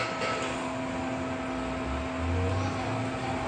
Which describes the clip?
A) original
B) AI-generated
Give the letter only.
A